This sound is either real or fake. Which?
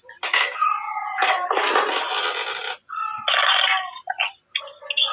real